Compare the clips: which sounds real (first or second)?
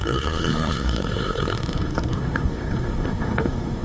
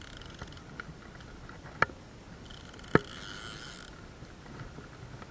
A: second